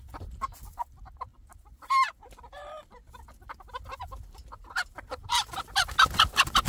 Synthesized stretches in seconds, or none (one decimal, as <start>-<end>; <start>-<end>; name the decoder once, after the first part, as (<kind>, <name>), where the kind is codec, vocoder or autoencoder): none